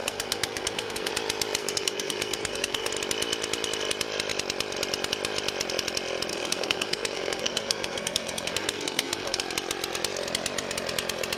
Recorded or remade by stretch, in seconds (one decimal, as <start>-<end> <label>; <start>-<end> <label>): 0.0-1.1 remade; 1.1-1.6 recorded; 1.6-2.9 remade; 2.9-6.3 recorded; 6.3-9.4 remade; 9.4-11.4 recorded